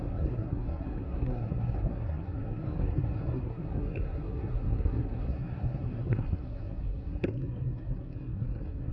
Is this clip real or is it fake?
fake